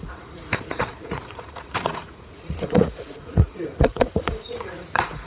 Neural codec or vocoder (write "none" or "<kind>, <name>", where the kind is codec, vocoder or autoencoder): vocoder, Vocos